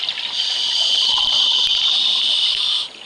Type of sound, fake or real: real